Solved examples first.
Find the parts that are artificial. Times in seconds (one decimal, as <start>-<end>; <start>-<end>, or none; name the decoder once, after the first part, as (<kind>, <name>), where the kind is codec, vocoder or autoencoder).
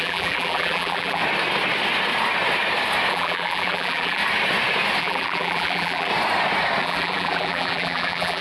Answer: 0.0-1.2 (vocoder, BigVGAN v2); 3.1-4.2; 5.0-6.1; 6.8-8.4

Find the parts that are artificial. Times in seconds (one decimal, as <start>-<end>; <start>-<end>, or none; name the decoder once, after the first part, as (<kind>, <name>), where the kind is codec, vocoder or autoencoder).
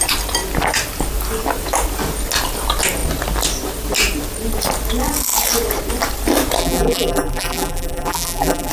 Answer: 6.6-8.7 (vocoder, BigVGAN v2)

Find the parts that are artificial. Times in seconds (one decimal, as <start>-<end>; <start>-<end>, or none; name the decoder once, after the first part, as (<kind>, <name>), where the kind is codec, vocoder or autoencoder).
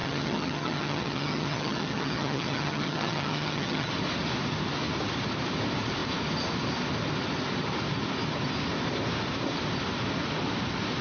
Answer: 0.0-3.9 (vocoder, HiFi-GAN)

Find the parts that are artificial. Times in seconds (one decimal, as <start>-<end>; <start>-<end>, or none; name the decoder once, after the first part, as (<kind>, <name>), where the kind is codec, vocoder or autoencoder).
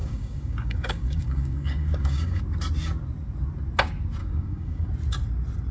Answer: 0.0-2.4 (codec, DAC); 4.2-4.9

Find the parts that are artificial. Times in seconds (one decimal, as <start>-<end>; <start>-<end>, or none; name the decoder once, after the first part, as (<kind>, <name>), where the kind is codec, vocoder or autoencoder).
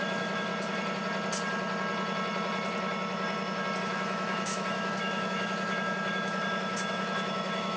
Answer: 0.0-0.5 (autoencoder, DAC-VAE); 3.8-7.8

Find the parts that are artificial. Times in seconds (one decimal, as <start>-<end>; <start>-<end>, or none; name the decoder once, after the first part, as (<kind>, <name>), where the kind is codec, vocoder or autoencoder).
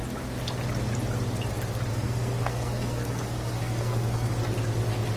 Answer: 1.9-4.3 (codec, SNAC)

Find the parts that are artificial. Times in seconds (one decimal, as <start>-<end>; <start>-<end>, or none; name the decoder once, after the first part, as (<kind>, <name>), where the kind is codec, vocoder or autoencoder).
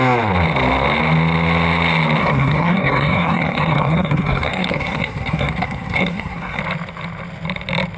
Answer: 2.2-6.6 (codec, SNAC)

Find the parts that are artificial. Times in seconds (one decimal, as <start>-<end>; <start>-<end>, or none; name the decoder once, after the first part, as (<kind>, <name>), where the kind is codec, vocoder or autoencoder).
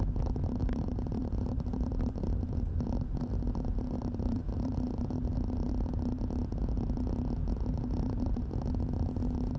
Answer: 0.6-5.7 (vocoder, BigVGAN v2); 7.4-8.4